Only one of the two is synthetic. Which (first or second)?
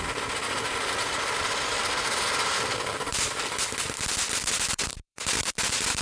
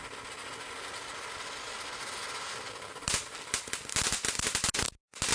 first